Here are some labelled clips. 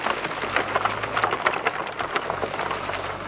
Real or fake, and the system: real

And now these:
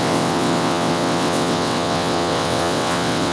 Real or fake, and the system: fake, vocoder, WaveNeXt